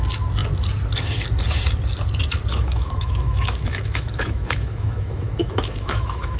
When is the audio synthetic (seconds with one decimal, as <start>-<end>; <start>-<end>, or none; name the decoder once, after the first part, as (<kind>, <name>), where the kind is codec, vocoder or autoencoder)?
2.5-6.4 (autoencoder, DAC-VAE)

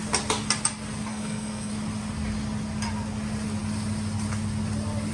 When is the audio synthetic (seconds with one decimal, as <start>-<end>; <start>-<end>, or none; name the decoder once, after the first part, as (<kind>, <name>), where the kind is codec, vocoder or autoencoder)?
1.1-1.7 (codec, SNAC)